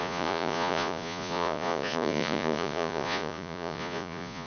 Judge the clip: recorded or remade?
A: remade